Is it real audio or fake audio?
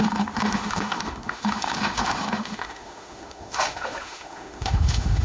fake